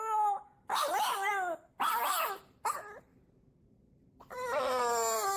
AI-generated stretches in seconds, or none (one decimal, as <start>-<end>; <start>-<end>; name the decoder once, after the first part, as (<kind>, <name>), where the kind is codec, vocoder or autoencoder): 0.7-1.3 (vocoder, BigVGAN v2); 3.1-4.8